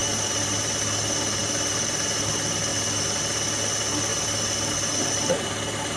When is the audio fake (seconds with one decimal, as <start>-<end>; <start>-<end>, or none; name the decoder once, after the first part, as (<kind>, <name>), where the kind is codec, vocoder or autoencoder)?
none